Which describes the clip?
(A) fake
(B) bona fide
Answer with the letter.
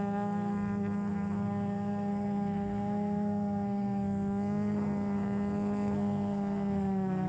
A